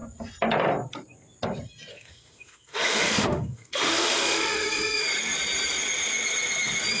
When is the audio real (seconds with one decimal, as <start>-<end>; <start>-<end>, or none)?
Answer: 0.0-1.9; 5.0-7.0